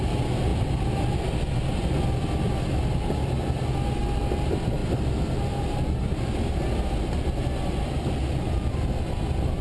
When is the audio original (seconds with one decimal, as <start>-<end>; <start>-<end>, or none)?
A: 0.0-9.6